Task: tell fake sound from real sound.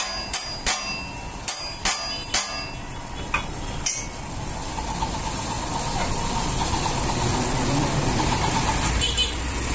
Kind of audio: real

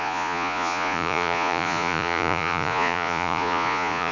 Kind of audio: fake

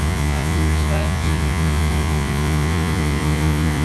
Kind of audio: fake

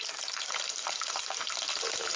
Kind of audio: real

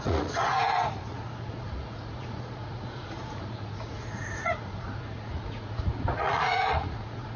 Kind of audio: fake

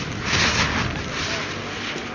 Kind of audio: real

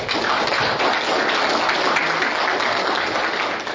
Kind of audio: real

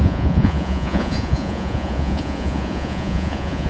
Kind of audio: fake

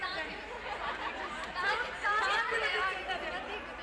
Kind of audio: real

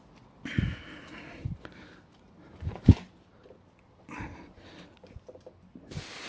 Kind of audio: real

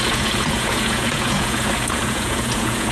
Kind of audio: fake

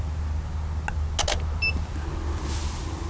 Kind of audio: real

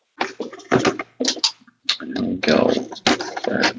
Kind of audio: real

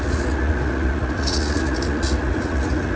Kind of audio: fake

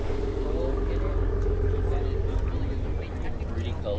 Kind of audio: real